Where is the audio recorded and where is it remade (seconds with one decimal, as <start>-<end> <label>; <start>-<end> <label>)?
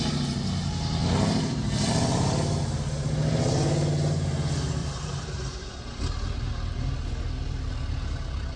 0.0-1.0 recorded; 1.0-2.6 remade; 2.6-4.8 recorded; 4.8-5.7 remade; 5.7-8.6 recorded